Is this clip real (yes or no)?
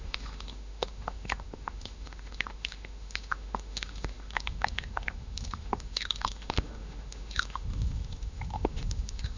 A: no